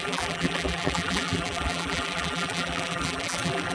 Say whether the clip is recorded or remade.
remade